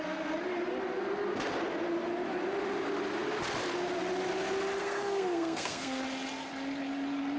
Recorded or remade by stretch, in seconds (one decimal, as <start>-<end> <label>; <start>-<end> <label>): 0.0-4.8 recorded; 4.8-6.0 remade; 6.0-7.4 recorded